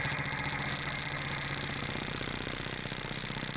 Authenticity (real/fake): real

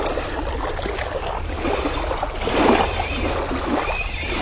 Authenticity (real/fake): real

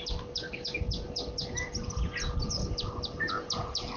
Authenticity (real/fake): real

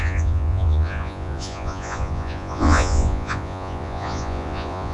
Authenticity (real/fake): fake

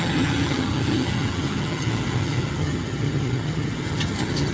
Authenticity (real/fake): fake